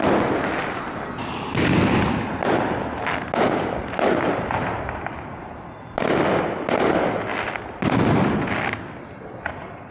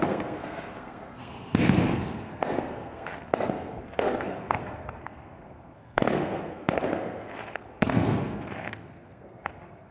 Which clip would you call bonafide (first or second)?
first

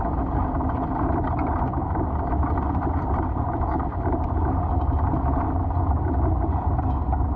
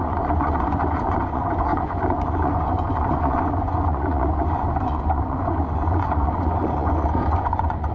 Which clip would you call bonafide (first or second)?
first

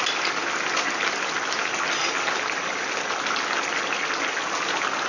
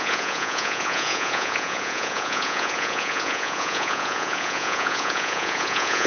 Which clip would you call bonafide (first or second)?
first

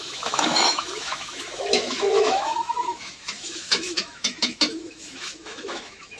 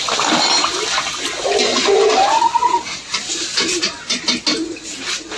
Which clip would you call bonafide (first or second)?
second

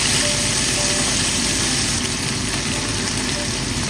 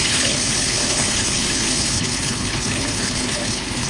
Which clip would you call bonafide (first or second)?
first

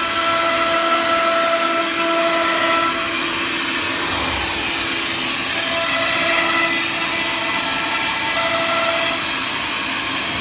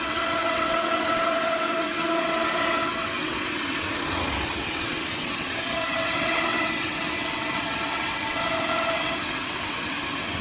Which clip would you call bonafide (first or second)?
first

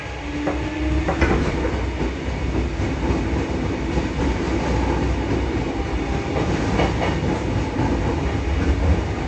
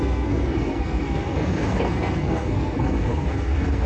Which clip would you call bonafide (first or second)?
first